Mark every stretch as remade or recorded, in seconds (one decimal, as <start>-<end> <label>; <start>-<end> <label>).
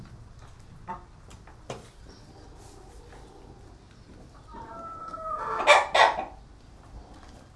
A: 0.0-5.0 recorded; 5.0-5.6 remade; 5.6-7.6 recorded